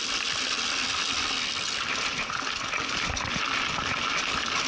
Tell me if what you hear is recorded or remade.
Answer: recorded